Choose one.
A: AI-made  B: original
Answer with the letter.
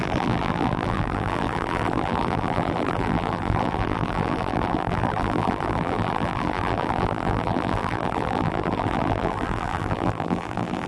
A